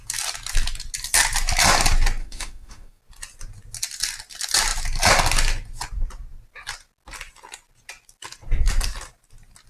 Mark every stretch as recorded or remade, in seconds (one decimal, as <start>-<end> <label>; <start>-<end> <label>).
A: 0.0-2.2 recorded; 2.2-3.0 remade; 3.0-9.7 recorded